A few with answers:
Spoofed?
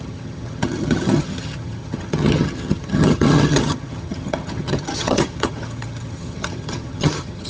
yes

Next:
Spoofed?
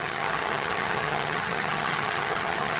yes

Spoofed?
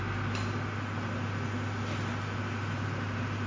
no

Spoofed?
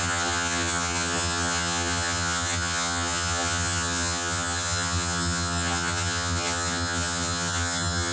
yes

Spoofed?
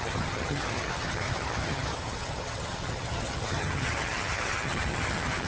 yes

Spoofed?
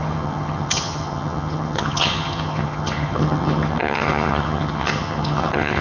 yes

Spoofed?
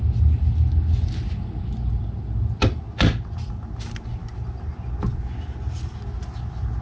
no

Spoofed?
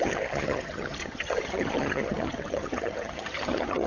yes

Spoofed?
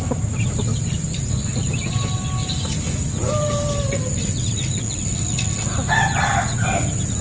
no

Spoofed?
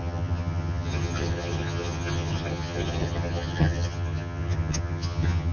yes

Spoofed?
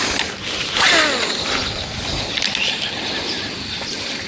no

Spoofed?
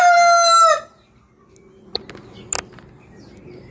no